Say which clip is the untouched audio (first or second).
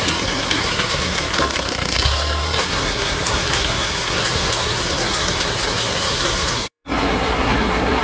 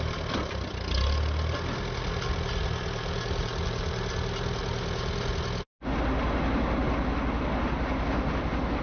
second